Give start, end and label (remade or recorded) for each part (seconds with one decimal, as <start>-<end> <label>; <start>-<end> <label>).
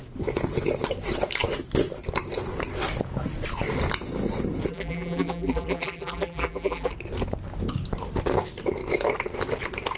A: 0.0-4.7 recorded; 4.7-6.9 remade; 6.9-10.0 recorded